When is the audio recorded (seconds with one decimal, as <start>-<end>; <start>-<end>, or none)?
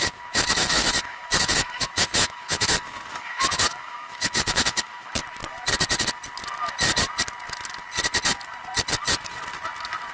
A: 5.2-10.1